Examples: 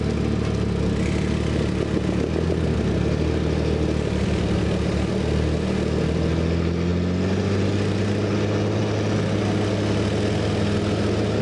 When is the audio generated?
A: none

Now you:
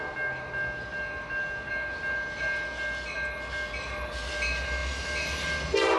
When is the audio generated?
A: none